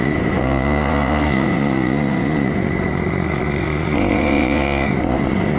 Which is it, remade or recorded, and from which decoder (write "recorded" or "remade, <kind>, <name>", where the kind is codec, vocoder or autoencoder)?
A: remade, vocoder, Vocos